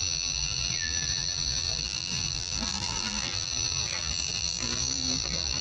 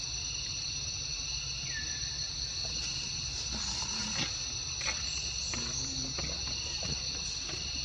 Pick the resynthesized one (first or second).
first